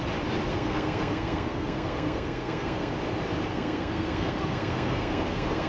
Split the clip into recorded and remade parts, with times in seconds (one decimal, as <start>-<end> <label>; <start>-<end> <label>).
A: 0.0-0.5 recorded; 0.5-2.9 remade; 2.9-3.5 recorded; 3.5-5.7 remade